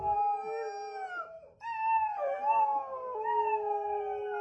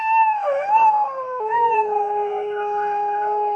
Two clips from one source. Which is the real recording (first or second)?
first